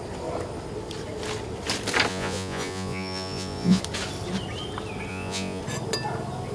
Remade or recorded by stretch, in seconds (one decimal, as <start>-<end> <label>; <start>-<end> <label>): 0.0-2.1 recorded; 2.1-3.8 remade; 3.8-5.1 recorded; 5.1-5.6 remade; 5.6-6.5 recorded